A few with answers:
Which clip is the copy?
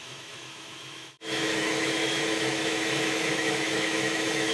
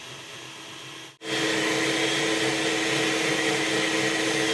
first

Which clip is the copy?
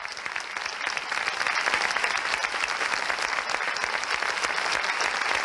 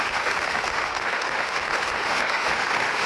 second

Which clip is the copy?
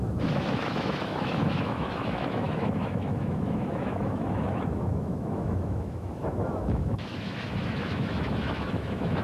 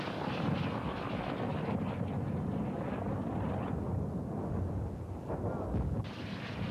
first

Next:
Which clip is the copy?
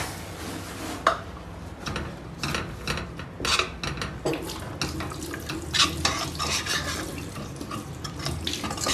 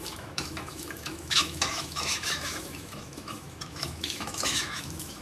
second